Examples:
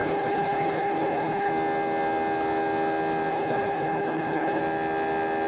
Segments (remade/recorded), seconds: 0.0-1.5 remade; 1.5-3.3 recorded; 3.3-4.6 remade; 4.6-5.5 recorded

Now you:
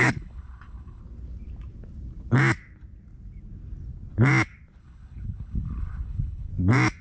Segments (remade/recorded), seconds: 0.0-1.0 remade; 1.0-4.8 recorded; 4.8-6.5 remade; 6.5-7.0 recorded

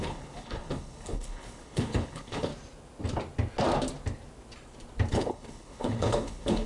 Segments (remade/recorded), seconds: 0.0-2.5 remade; 2.5-5.1 recorded; 5.1-6.7 remade

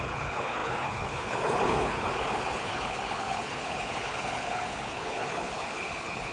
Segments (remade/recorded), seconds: 0.0-6.3 remade

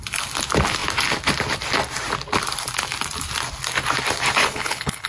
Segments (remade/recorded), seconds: 0.0-4.4 recorded; 4.4-5.1 remade

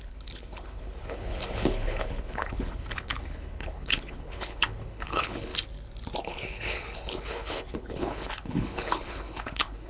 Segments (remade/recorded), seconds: 0.0-5.5 remade; 5.5-6.2 recorded; 6.2-9.9 remade